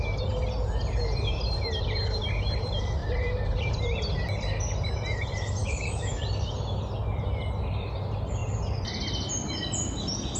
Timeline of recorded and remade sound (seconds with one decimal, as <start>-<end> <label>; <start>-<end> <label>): 0.0-5.6 recorded; 5.6-6.2 remade; 6.2-10.4 recorded